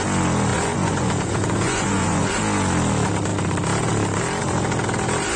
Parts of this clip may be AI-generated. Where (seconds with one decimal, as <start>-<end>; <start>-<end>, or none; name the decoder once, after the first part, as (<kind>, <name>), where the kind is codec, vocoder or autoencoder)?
0.5-2.3 (vocoder, Vocos)